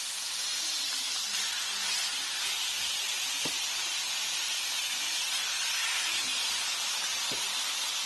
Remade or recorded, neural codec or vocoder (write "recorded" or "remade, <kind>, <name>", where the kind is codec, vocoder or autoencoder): recorded